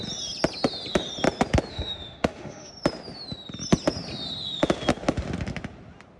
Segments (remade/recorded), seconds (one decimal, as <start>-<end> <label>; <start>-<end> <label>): 0.0-1.7 recorded; 1.7-2.7 remade; 2.7-6.2 recorded